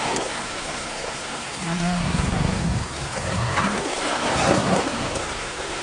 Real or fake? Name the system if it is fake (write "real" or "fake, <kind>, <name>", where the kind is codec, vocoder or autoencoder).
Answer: fake, codec, SNAC